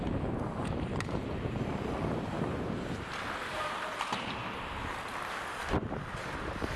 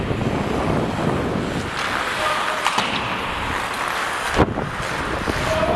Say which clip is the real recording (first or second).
second